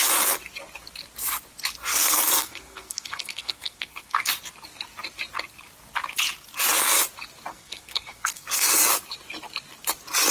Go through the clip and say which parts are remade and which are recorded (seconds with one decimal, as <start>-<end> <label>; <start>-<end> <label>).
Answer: 0.0-1.9 recorded; 1.9-4.2 remade; 4.2-7.5 recorded; 7.5-8.8 remade; 8.8-10.3 recorded